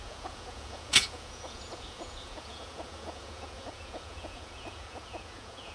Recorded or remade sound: remade